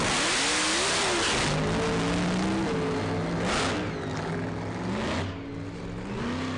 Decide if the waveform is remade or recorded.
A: recorded